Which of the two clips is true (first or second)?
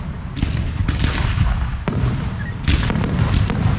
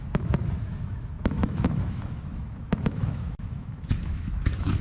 first